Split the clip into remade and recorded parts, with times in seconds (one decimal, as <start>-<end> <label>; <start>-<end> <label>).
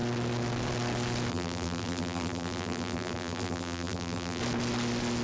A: 0.0-1.3 recorded; 1.3-4.4 remade; 4.4-5.2 recorded